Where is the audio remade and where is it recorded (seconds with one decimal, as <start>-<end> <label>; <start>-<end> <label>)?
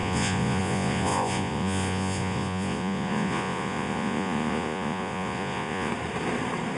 0.0-5.9 remade; 5.9-6.8 recorded